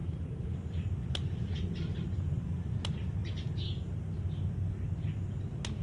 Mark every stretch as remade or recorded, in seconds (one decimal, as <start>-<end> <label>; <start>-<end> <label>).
0.0-2.8 remade; 2.8-3.2 recorded; 3.2-4.2 remade; 4.2-5.8 recorded